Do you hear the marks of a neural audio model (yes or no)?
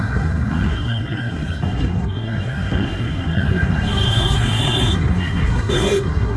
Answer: yes